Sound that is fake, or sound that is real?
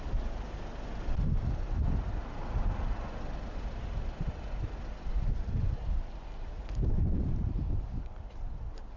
real